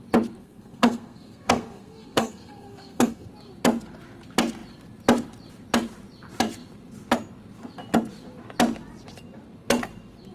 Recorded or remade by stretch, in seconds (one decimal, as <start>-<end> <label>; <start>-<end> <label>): 0.0-0.4 recorded; 0.4-3.3 remade; 3.3-10.3 recorded